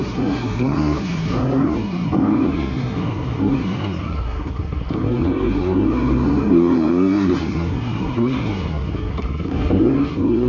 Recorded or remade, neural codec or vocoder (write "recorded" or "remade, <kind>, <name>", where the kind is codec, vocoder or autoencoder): remade, codec, SNAC